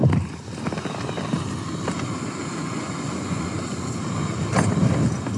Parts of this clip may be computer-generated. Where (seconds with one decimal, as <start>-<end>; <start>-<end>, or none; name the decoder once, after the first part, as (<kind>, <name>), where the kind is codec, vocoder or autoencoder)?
2.5-3.6 (vocoder, Vocos)